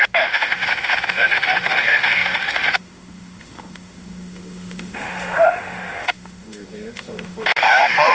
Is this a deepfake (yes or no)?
yes